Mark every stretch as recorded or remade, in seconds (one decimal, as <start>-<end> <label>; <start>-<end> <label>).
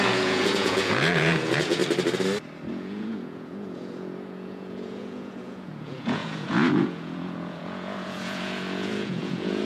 0.0-1.8 remade; 1.8-2.7 recorded; 2.7-9.6 remade